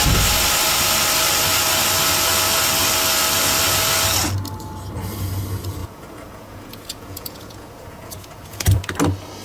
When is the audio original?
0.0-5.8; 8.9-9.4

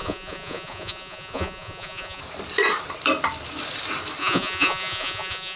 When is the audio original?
2.2-4.2

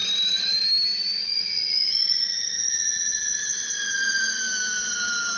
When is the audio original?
0.0-1.2; 4.4-5.4

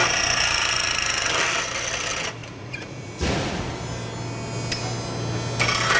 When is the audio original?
0.0-2.4; 3.7-6.0

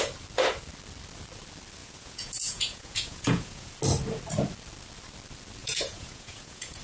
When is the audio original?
0.0-1.8; 3.7-5.6

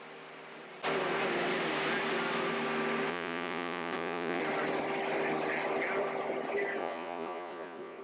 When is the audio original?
0.0-3.1; 4.4-6.8